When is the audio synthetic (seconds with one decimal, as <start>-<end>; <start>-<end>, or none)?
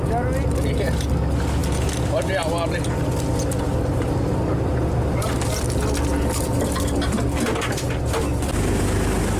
none